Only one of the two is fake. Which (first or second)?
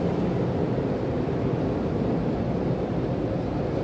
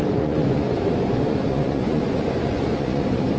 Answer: second